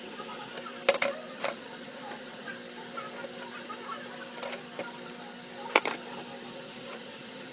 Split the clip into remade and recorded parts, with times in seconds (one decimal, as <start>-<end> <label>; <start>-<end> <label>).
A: 0.0-0.5 remade; 0.5-1.3 recorded; 1.3-2.5 remade; 2.5-6.5 recorded; 6.5-7.5 remade